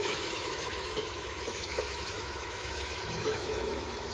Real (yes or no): no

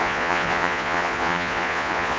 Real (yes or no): no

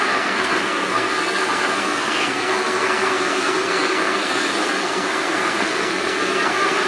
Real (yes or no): no